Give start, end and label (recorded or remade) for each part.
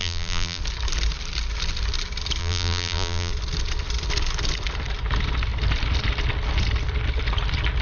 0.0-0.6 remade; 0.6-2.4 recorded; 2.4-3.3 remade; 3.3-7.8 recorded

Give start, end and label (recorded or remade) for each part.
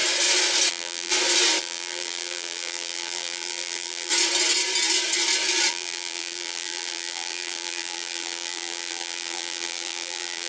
0.0-0.7 recorded; 0.7-1.1 remade; 1.1-1.6 recorded; 1.6-4.1 remade; 4.1-5.7 recorded; 5.7-10.5 remade